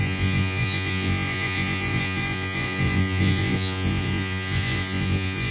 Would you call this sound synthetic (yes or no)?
yes